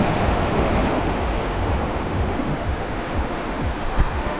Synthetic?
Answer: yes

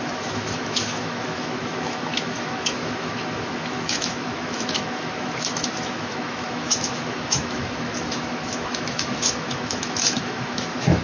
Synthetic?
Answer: yes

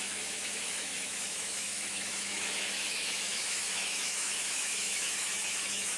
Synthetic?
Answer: yes